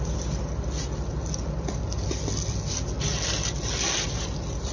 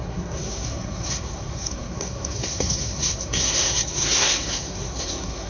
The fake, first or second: second